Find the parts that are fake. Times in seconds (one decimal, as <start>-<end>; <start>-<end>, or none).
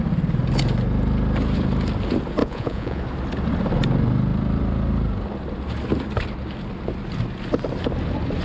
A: 2.4-3.0